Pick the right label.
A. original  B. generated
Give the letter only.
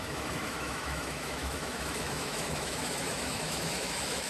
B